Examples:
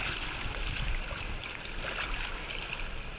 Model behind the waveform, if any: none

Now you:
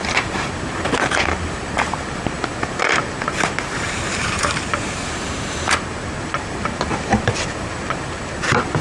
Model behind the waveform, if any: vocoder, BigVGAN v2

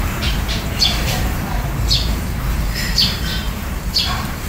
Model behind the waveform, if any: vocoder, BigVGAN v2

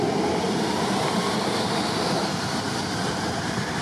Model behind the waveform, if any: vocoder, BigVGAN v2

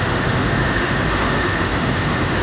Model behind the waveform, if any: autoencoder, DAC-VAE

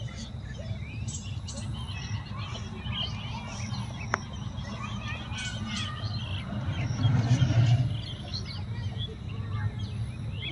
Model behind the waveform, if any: none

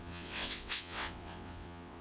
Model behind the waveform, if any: vocoder, WaveNeXt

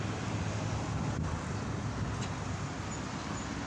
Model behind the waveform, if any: none